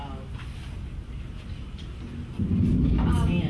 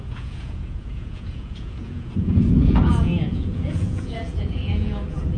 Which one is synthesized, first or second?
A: second